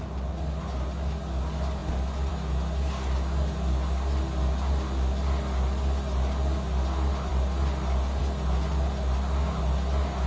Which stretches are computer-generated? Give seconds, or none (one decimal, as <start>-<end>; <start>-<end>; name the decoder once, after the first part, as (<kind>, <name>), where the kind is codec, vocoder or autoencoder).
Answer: none

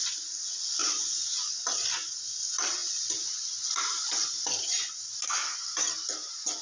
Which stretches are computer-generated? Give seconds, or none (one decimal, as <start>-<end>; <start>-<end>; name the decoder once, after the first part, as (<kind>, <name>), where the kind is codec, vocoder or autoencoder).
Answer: 0.8-1.6 (vocoder, WaveNeXt)

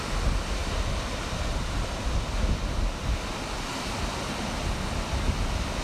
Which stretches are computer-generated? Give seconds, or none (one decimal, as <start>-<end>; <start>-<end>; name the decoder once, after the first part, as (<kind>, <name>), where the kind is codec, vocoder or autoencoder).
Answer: none

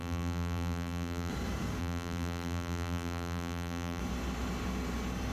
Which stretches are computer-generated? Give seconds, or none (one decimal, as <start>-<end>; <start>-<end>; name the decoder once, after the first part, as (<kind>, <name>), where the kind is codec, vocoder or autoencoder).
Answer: 0.0-1.3 (vocoder, BigVGAN v2); 1.8-4.0

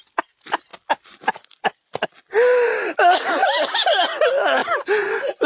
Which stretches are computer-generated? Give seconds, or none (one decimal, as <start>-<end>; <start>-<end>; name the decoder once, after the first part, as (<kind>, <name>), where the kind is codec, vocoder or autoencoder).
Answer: none

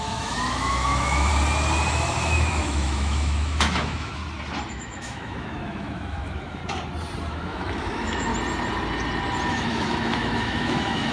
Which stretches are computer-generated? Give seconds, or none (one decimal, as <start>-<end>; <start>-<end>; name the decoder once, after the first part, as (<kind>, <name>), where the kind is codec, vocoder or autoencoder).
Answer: 0.0-1.3 (autoencoder, DAC-VAE); 1.9-4.2; 4.7-6.6; 7.3-8.3; 9.5-11.1